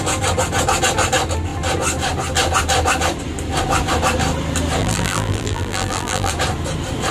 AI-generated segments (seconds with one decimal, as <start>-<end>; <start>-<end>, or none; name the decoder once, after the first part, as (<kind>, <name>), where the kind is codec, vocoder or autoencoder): 4.8-6.3 (vocoder, BigVGAN v2)